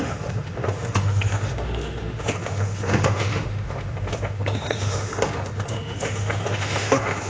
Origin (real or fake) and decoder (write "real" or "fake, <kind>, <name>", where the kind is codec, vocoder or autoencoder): fake, autoencoder, DAC-VAE